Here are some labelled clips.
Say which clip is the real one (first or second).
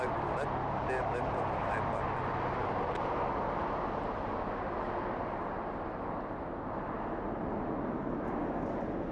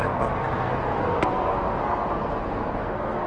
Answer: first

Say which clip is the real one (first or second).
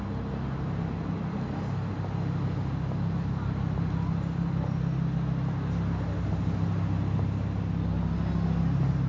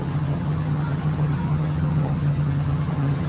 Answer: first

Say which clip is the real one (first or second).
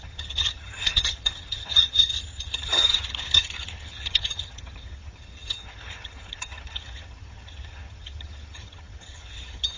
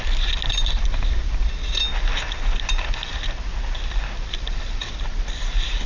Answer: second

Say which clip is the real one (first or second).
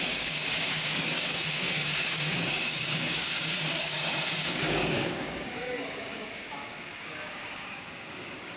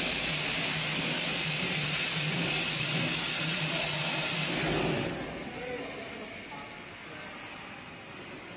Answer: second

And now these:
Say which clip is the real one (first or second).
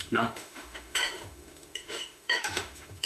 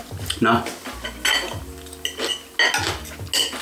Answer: second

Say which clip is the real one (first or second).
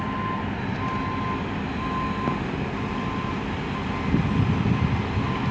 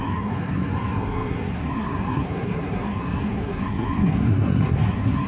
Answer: first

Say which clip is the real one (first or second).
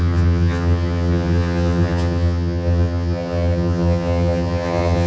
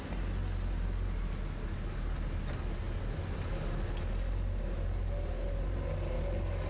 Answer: second